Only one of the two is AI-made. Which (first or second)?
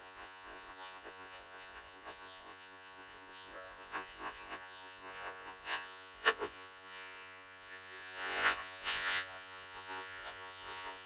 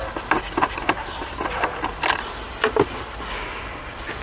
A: first